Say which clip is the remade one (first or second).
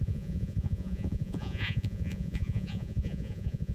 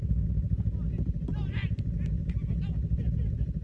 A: first